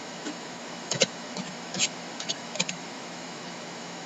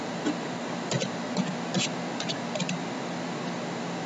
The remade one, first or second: first